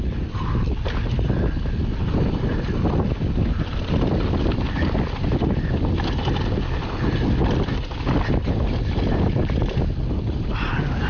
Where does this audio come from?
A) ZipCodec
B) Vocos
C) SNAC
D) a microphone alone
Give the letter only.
D